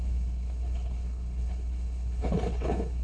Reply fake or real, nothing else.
fake